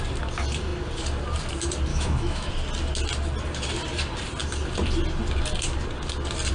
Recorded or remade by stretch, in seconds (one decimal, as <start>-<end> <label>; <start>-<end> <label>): 0.0-1.9 recorded; 1.9-2.5 remade; 2.5-6.5 recorded